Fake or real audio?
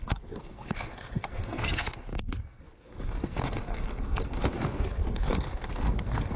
fake